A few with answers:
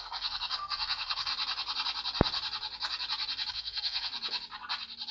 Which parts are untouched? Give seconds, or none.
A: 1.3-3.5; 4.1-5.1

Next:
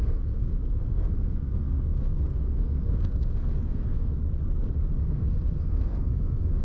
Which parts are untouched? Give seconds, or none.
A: 4.2-5.0

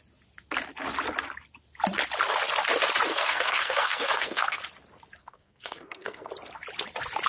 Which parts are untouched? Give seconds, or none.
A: 0.0-3.1; 4.6-5.2; 6.3-7.3

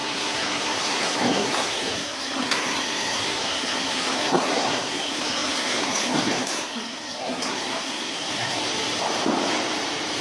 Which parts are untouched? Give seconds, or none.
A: 8.6-10.2

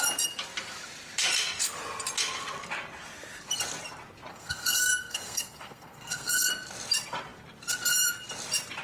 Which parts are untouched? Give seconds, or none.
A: 0.0-4.3; 6.5-8.8

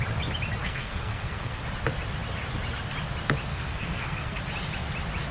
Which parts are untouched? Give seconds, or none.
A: 0.0-0.6; 1.6-3.5; 4.4-5.3

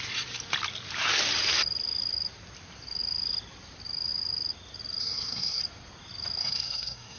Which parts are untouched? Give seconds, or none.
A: 0.0-5.0; 5.6-6.4

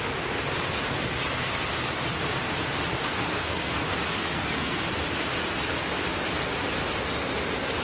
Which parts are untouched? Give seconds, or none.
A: 0.0-3.1; 3.8-4.2; 4.9-7.8